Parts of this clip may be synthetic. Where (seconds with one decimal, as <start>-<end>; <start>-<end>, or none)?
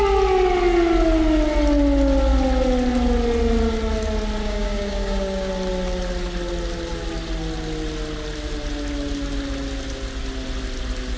4.4-5.5